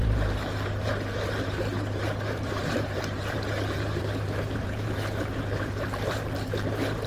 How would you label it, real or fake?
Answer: fake